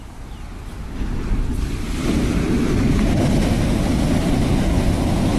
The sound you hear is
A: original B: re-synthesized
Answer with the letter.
B